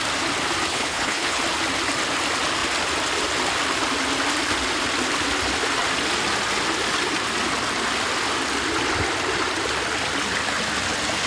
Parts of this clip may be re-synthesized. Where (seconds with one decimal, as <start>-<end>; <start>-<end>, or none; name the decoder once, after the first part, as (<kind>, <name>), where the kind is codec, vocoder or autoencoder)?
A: 0.7-1.4 (codec, HILCodec)